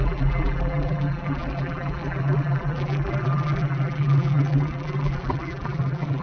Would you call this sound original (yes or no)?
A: no